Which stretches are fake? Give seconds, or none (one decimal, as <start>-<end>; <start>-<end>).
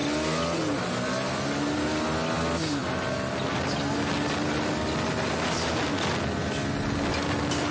none